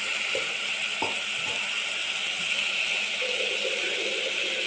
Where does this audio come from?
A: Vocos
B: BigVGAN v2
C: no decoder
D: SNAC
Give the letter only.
C